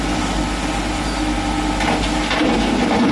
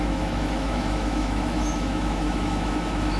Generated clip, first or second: second